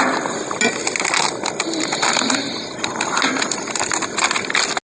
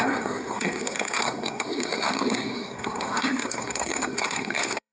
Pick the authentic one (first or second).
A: first